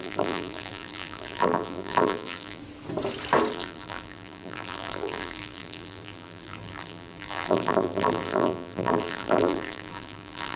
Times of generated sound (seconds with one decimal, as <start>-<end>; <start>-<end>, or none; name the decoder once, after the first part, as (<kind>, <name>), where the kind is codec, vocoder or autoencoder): 0.0-2.6 (vocoder, BigVGAN v2); 3.5-10.6